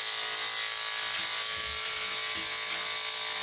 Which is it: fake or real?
real